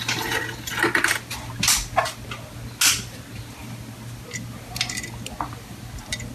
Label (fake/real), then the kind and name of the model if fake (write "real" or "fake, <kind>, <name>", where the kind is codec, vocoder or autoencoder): real